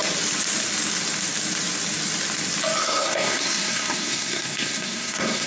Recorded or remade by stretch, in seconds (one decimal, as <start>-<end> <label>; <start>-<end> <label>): 0.0-2.8 recorded; 2.8-5.5 remade